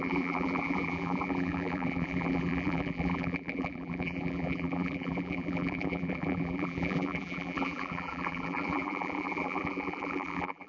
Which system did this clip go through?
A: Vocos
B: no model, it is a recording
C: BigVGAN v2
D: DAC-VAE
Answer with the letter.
C